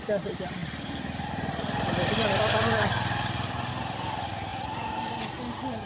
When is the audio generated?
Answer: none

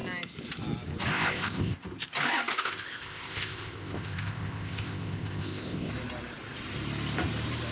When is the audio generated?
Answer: 1.1-1.8 (codec, ZipCodec); 2.5-5.9

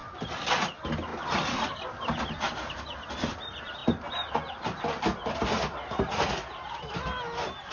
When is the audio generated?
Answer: none

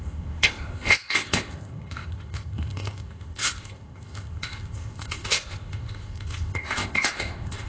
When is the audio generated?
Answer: 0.0-7.7 (codec, ZipCodec)

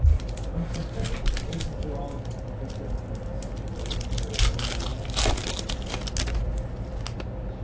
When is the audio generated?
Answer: none

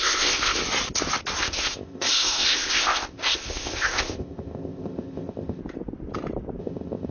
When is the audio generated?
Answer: 0.0-0.6 (codec, ZipCodec); 1.4-5.6; 6.6-7.1